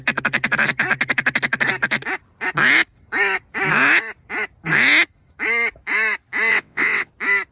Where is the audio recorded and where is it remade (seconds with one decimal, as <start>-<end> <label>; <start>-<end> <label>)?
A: 0.0-6.5 recorded; 6.5-7.1 remade; 7.1-7.5 recorded